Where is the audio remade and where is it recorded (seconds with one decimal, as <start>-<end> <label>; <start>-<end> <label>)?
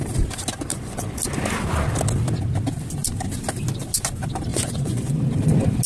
0.0-0.7 recorded; 0.7-1.2 remade; 1.2-4.5 recorded; 4.5-5.2 remade; 5.2-5.9 recorded